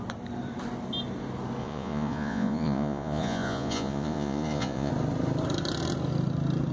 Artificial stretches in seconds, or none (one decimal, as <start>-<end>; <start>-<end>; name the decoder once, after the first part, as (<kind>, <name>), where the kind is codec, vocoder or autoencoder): 1.6-4.9 (vocoder, Vocos)

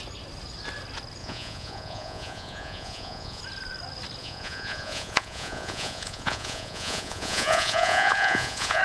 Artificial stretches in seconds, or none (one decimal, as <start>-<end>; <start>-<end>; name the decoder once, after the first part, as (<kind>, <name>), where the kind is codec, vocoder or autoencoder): 1.2-3.4 (vocoder, Vocos); 4.2-8.8

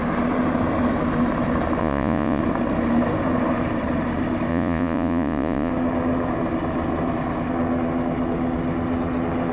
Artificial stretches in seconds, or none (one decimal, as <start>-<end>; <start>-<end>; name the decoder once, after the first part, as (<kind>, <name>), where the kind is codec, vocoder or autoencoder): 1.8-2.4 (vocoder, Vocos); 4.5-5.7

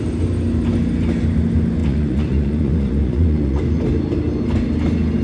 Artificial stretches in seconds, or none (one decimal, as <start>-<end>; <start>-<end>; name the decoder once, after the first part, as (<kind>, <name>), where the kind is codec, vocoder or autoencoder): 1.8-3.6 (vocoder, Vocos)

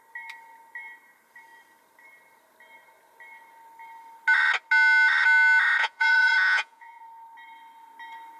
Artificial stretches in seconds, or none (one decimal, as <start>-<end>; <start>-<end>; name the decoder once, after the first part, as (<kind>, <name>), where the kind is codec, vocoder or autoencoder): 5.8-7.0 (vocoder, Vocos)